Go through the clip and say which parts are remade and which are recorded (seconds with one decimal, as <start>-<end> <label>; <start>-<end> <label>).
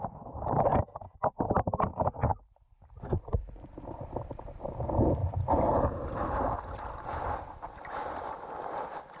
0.0-2.3 recorded; 2.3-3.4 remade; 3.4-5.2 recorded; 5.2-8.5 remade; 8.5-9.2 recorded